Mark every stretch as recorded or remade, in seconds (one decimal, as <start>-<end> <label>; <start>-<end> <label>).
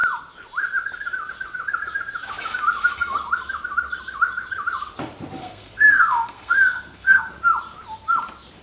0.0-5.4 recorded; 5.4-7.3 remade; 7.3-8.6 recorded